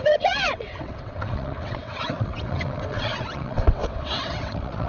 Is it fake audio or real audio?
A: fake